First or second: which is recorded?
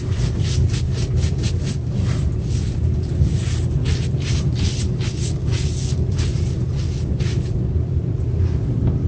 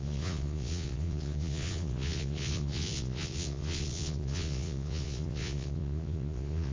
first